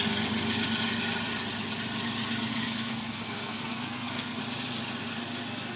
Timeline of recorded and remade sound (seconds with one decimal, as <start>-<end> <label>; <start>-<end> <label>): 0.0-2.5 recorded; 2.5-4.4 remade; 4.4-5.8 recorded